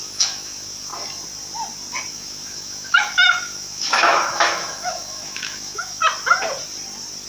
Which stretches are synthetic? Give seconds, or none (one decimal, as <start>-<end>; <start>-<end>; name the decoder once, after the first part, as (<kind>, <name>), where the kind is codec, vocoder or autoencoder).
0.0-0.9 (autoencoder, DAC-VAE); 2.1-6.0